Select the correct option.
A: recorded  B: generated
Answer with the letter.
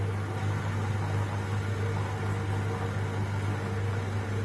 A